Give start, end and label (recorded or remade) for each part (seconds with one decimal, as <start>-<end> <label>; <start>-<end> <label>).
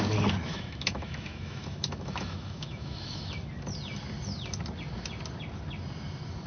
0.0-0.5 recorded; 0.5-3.3 remade; 3.3-6.5 recorded